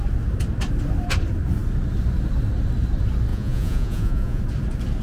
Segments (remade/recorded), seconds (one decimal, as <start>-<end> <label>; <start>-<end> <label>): 0.0-3.3 recorded; 3.3-4.4 remade; 4.4-5.0 recorded